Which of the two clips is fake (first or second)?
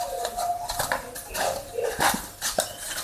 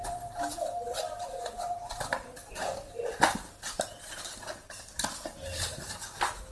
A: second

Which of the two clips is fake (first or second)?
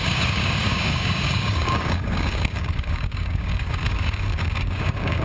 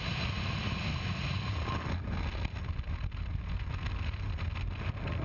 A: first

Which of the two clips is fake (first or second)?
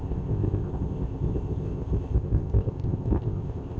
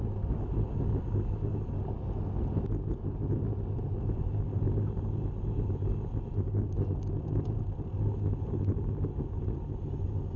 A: first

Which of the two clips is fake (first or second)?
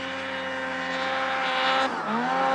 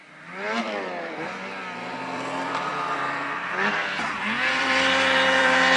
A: second